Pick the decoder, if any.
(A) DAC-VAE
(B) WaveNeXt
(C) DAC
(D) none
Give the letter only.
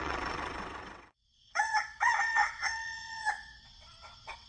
B